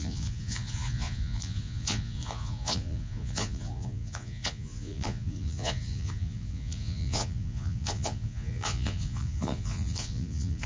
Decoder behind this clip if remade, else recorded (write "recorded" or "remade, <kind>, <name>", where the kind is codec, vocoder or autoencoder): remade, vocoder, Vocos